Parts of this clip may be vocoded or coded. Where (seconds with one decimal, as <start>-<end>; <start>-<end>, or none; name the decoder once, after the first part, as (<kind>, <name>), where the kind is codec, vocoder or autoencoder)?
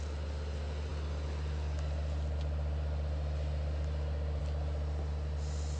none